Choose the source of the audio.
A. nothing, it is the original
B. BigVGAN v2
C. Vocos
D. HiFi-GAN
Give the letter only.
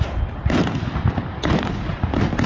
A